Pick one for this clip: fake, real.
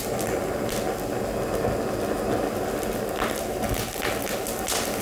real